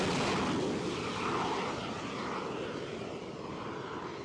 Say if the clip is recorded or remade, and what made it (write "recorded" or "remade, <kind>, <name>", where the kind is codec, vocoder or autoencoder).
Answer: recorded